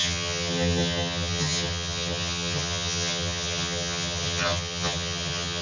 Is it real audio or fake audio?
fake